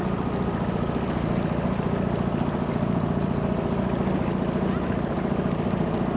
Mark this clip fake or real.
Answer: real